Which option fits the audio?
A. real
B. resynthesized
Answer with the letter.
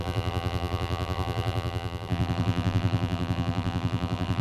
B